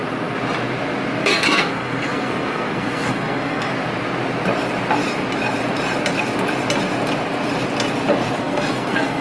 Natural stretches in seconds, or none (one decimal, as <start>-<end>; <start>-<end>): 0.0-1.2; 3.7-8.4